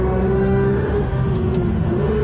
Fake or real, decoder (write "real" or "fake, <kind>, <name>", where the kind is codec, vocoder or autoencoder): fake, autoencoder, DAC-VAE